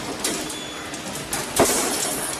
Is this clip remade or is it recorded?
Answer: recorded